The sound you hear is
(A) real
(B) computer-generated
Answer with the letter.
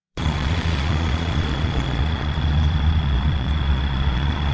B